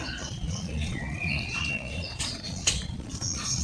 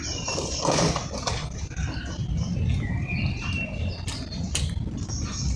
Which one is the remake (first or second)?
first